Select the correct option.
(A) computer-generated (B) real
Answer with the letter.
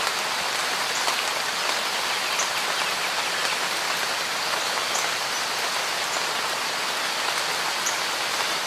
B